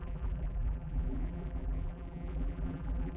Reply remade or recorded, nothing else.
remade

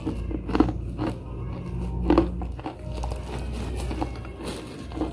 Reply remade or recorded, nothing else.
recorded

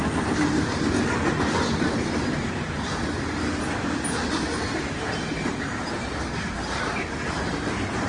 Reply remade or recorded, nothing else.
recorded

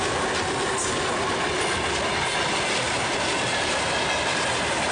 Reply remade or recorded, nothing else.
recorded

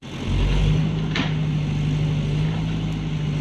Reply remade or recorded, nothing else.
recorded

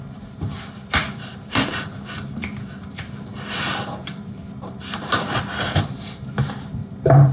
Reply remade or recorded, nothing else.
remade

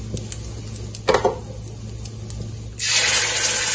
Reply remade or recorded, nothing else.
recorded